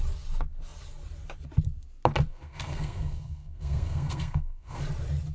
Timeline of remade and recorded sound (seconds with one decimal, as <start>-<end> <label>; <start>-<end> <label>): 0.0-2.3 recorded; 2.3-4.8 remade; 4.8-5.3 recorded